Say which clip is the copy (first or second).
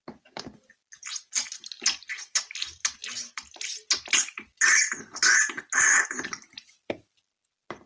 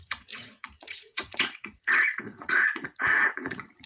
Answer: second